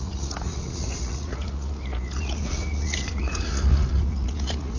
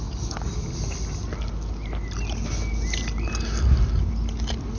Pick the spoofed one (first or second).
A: first